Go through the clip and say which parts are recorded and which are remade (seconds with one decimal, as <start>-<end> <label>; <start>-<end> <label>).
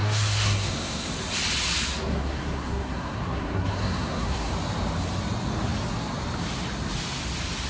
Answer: 0.0-1.1 remade; 1.1-2.1 recorded; 2.1-4.5 remade; 4.5-7.7 recorded